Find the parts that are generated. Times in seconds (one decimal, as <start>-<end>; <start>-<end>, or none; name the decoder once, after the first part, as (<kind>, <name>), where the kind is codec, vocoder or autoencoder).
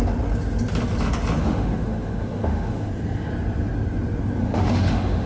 1.4-2.9 (autoencoder, DAC-VAE); 4.4-5.3